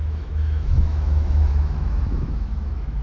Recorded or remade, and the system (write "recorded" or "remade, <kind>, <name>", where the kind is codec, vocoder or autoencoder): remade, autoencoder, DAC-VAE